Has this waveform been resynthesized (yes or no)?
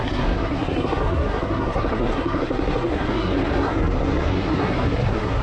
yes